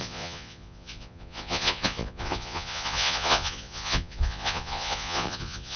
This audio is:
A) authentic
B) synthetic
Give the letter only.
B